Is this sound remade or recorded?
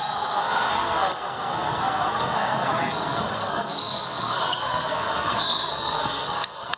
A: remade